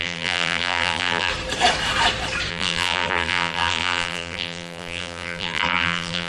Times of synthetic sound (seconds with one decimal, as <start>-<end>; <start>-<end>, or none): 0.0-1.3; 2.5-6.3